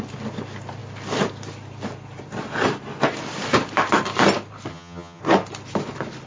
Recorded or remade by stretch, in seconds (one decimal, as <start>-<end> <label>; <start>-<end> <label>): 0.0-4.7 recorded; 4.7-5.2 remade; 5.2-6.3 recorded